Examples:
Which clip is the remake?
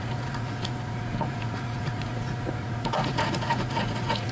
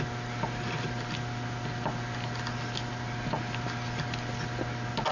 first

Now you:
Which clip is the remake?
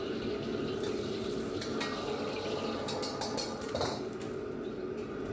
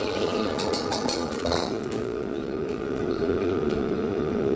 second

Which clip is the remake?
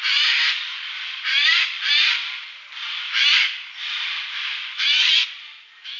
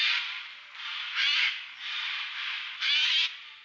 first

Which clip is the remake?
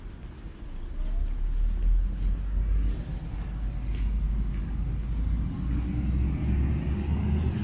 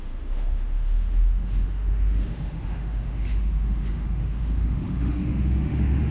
second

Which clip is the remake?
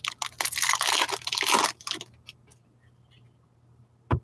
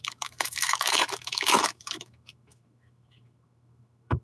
second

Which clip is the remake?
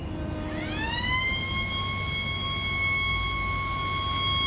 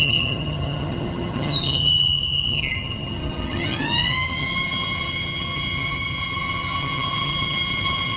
second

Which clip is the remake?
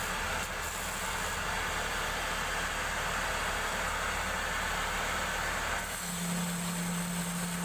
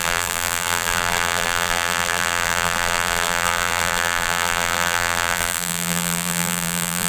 second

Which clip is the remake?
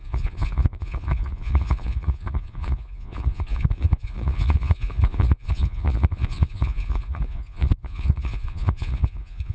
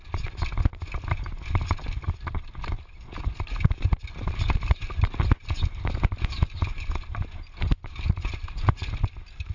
first